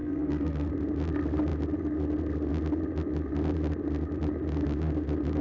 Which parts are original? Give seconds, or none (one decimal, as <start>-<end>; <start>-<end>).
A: 0.7-5.4